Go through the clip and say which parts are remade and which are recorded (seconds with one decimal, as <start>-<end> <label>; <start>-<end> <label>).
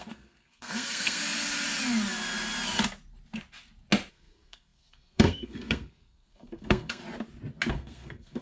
0.0-1.2 remade; 1.2-4.1 recorded; 4.1-7.0 remade; 7.0-7.7 recorded; 7.7-8.4 remade